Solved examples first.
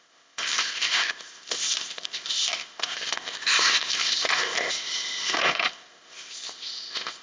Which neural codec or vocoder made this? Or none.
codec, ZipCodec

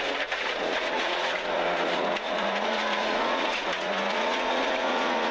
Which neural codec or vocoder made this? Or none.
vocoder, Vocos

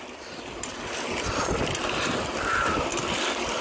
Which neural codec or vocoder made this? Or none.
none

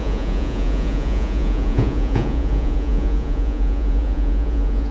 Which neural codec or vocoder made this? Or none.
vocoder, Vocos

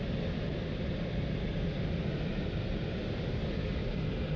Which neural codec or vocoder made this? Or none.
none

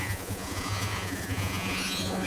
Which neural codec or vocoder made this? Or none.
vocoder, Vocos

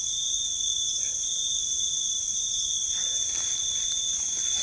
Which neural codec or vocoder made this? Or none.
vocoder, BigVGAN v2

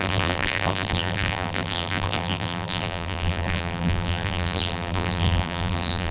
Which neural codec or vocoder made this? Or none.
vocoder, BigVGAN v2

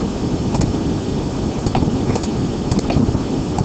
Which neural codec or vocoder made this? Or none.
none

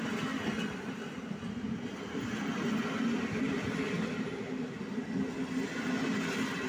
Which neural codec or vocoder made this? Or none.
none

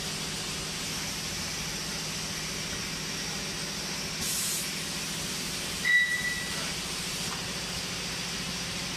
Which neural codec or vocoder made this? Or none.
none